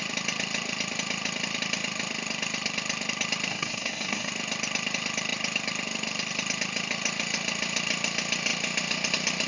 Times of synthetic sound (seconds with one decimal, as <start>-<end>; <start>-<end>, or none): 3.5-4.3